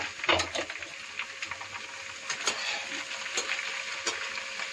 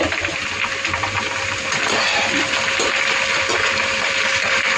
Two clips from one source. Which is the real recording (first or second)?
first